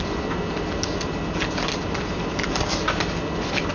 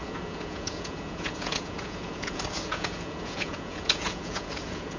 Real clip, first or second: first